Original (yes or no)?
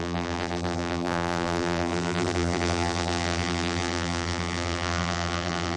no